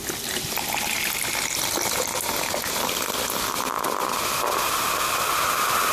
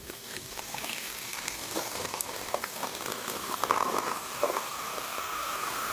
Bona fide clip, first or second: first